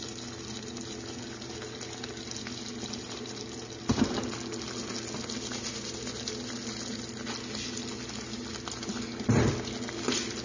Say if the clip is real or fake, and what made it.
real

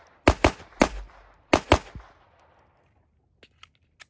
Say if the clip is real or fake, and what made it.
real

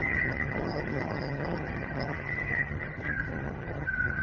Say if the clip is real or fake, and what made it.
fake, vocoder, HiFi-GAN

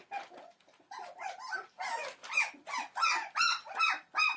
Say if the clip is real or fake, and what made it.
real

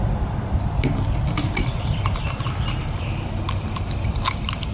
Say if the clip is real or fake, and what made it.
real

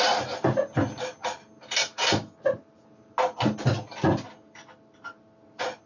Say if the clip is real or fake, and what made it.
real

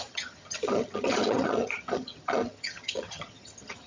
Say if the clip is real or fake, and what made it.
fake, vocoder, HiFi-GAN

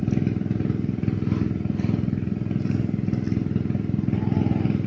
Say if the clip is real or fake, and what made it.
real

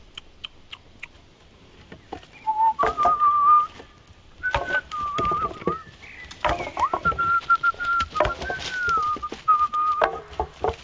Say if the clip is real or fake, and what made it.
real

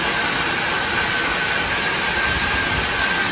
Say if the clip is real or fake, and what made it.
real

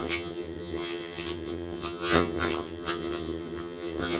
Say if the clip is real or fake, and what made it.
fake, vocoder, HiFi-GAN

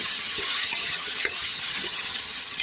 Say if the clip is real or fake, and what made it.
fake, vocoder, HiFi-GAN